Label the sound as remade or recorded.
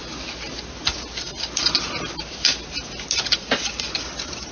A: recorded